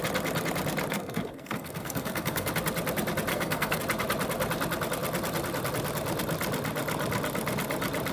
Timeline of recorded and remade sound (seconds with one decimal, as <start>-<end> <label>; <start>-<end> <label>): 0.0-0.9 recorded; 0.9-2.5 remade; 2.5-3.3 recorded; 3.3-3.8 remade; 3.8-8.1 recorded